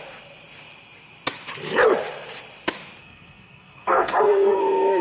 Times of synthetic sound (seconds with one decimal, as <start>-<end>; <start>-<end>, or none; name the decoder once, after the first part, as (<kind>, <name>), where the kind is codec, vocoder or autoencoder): 3.0-4.6 (codec, SNAC)